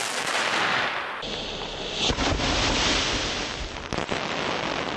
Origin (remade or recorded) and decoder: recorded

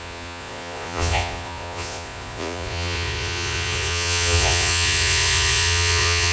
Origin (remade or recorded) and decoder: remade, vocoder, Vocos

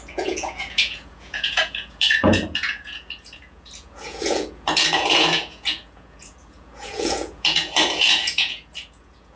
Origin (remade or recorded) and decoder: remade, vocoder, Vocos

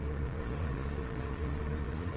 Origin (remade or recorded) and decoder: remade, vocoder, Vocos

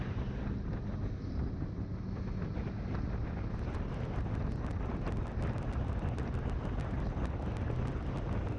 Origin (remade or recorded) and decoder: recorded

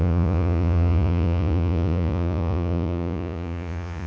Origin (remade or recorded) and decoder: remade, vocoder, Vocos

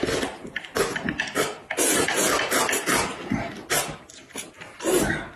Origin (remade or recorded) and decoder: recorded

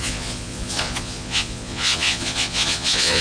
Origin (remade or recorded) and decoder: remade, vocoder, Vocos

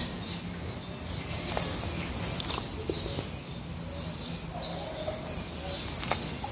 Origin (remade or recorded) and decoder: recorded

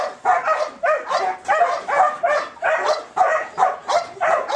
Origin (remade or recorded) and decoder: recorded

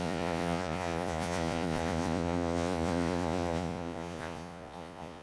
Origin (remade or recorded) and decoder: remade, vocoder, Vocos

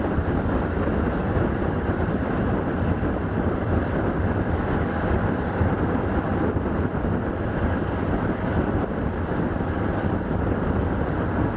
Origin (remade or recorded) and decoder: recorded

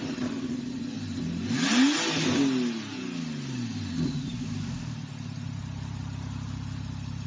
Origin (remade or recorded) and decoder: recorded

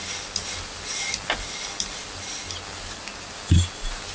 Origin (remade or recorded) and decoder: recorded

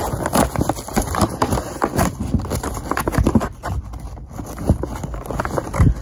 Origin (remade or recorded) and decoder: recorded